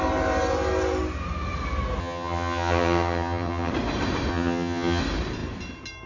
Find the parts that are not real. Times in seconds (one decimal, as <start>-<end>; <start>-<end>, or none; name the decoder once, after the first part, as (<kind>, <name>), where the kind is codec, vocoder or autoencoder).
2.0-3.7 (vocoder, HiFi-GAN); 4.3-5.0